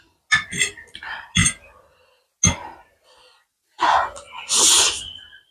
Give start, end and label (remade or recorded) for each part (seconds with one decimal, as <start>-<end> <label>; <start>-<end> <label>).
0.0-5.5 recorded